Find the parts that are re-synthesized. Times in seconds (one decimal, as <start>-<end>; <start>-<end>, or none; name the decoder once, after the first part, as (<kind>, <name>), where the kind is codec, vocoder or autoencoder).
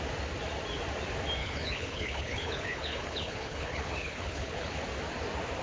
1.4-4.8 (codec, HILCodec)